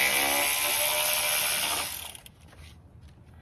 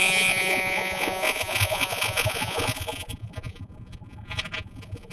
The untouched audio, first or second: first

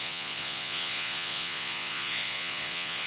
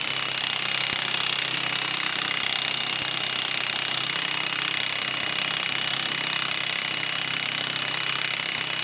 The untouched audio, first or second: second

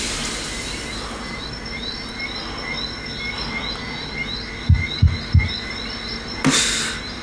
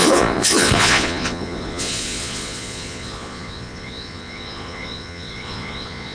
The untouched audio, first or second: first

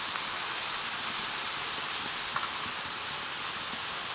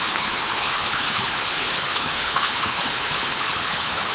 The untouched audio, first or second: first